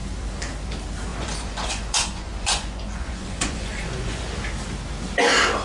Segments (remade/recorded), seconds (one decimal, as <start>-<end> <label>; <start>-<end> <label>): 0.0-1.1 recorded; 1.1-4.3 remade; 4.3-5.6 recorded